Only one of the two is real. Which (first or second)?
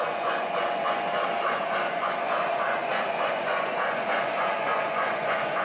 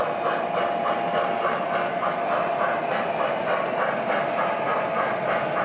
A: second